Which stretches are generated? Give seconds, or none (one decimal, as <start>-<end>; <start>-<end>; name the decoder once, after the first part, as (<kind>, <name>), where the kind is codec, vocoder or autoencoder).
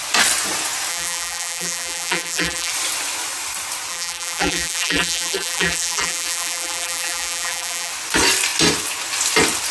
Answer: 0.9-2.7 (vocoder, BigVGAN v2); 3.9-7.9